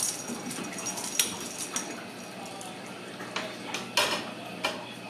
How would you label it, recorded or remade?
recorded